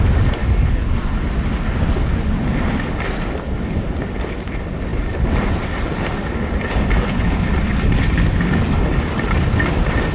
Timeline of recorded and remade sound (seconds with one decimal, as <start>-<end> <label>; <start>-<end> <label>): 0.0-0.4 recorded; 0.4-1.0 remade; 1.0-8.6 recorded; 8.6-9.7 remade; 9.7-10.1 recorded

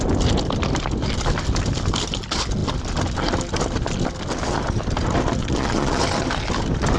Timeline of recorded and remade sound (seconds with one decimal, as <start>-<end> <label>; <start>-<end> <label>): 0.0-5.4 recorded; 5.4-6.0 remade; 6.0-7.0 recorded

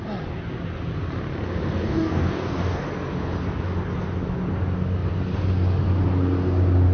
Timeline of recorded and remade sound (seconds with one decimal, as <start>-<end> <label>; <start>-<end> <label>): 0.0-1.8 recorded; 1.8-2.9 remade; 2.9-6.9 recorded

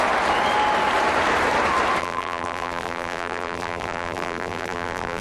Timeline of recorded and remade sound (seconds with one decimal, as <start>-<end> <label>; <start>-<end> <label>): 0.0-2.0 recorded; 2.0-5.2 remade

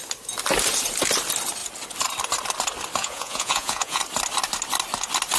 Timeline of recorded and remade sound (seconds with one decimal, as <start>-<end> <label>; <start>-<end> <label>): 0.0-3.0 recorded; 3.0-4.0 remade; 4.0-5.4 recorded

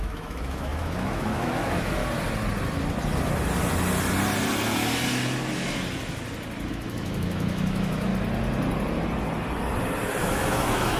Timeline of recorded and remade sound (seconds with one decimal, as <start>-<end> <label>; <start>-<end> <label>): 0.0-2.0 remade; 2.0-6.7 recorded; 6.7-8.1 remade; 8.1-10.2 recorded; 10.2-11.0 remade

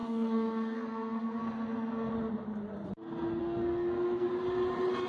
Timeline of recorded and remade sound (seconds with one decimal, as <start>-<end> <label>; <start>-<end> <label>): 0.0-2.1 remade; 2.1-3.4 recorded; 3.4-4.3 remade; 4.3-5.1 recorded

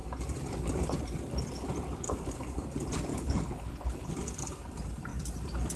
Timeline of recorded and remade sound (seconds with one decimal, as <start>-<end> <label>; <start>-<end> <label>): 0.0-3.1 recorded; 3.1-4.1 remade; 4.1-5.8 recorded